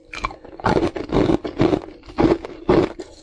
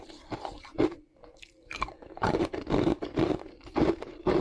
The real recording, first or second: first